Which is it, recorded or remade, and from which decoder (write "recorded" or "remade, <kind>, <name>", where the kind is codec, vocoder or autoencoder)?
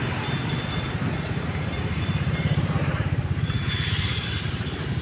remade, vocoder, BigVGAN v2